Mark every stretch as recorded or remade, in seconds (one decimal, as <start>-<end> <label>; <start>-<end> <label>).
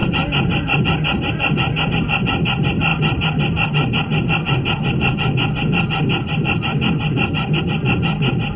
0.0-8.6 recorded